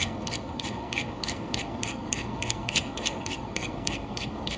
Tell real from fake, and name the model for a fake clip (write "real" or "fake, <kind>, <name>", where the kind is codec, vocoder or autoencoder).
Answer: fake, codec, SNAC